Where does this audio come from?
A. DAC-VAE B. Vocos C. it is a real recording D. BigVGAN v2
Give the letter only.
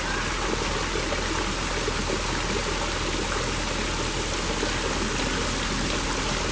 C